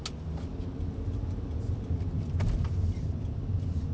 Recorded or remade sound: recorded